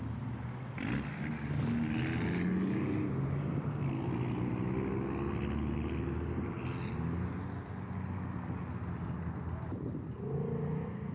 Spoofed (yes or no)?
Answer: no